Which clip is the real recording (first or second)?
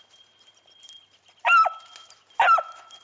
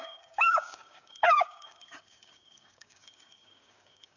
first